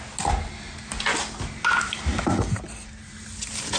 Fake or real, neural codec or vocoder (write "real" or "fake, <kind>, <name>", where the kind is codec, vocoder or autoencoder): real